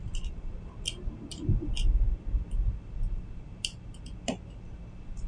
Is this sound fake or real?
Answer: real